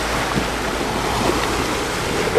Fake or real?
real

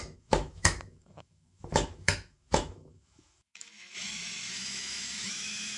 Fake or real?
fake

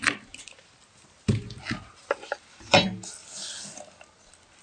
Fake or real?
real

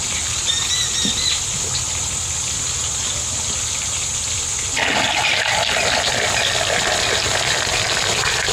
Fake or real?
real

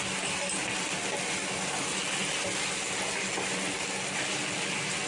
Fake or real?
real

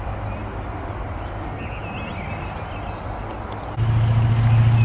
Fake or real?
real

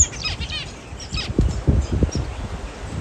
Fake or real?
real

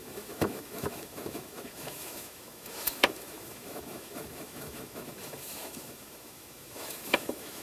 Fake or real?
fake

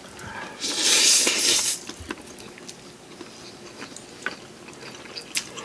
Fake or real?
real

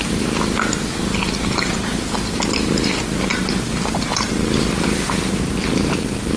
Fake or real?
real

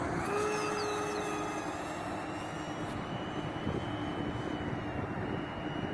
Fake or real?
real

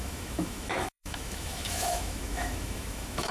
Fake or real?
fake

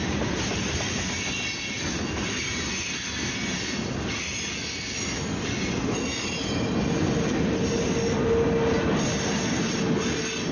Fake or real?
real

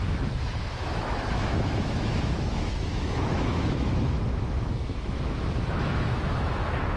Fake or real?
fake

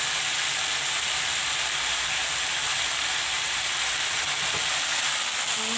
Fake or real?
real